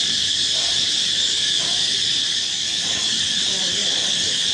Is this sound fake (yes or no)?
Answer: yes